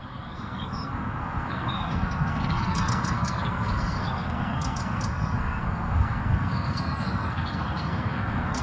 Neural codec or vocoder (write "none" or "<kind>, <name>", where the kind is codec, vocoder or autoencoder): codec, SNAC